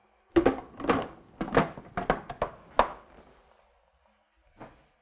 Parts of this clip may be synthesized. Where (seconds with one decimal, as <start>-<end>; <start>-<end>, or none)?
none